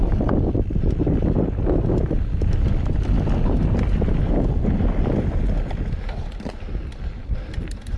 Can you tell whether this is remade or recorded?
recorded